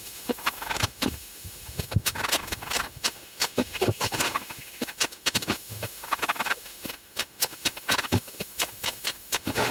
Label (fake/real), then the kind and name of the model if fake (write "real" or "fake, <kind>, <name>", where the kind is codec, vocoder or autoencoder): fake, autoencoder, DAC-VAE